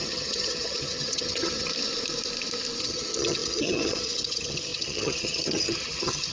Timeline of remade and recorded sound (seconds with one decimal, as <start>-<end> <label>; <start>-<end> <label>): 0.0-1.7 remade; 1.7-2.8 recorded; 2.8-6.3 remade